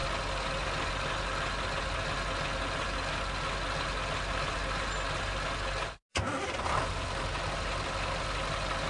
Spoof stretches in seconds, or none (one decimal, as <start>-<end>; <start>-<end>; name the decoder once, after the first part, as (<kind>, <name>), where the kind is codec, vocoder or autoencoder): none